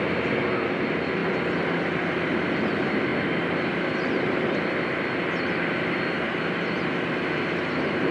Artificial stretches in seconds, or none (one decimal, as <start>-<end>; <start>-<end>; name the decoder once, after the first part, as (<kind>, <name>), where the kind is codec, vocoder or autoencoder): none